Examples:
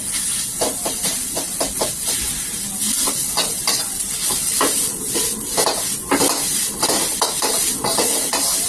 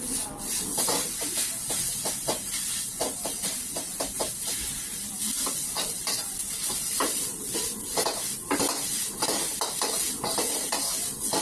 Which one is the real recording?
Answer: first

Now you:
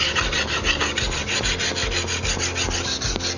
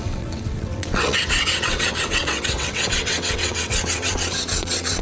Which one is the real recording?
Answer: first